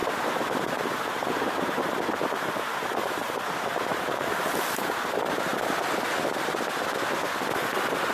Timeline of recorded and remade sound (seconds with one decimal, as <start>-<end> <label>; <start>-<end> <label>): 0.0-5.5 remade; 5.5-8.1 recorded